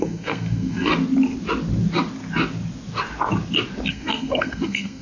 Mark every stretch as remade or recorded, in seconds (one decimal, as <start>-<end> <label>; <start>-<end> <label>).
0.0-0.9 remade; 0.9-3.9 recorded; 3.9-5.0 remade

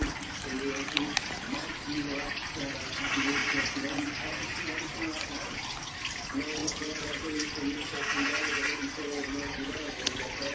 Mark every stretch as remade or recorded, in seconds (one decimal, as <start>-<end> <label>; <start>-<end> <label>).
0.0-10.5 recorded